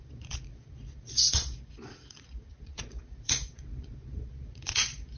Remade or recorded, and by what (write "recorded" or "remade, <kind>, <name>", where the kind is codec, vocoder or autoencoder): remade, vocoder, Vocos